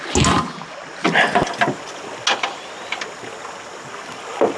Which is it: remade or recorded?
recorded